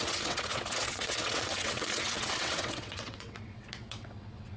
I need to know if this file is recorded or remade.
remade